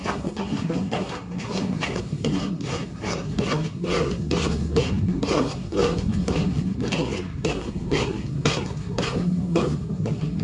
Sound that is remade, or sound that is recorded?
remade